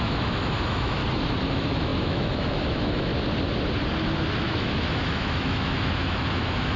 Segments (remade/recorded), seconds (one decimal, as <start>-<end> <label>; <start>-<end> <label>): 0.0-1.0 remade; 1.0-1.5 recorded; 1.5-3.1 remade; 3.1-4.4 recorded; 4.4-6.8 remade